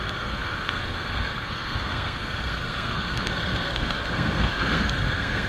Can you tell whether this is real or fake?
fake